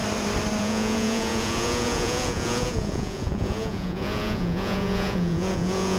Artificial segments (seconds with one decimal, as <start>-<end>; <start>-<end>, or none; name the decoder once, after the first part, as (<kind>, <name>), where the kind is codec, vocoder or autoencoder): 0.6-6.0 (vocoder, Vocos)